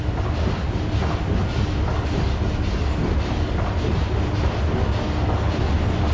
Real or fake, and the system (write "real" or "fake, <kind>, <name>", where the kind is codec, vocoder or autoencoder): real